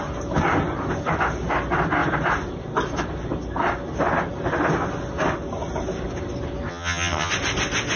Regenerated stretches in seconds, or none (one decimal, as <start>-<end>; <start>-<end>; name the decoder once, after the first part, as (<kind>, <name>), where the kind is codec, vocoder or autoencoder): 6.7-7.3 (vocoder, HiFi-GAN)